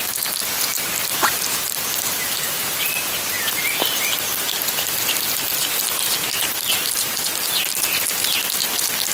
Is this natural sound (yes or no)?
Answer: yes